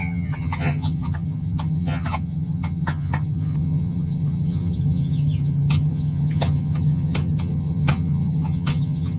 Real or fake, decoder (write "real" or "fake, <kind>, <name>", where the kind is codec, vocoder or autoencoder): fake, vocoder, HiFi-GAN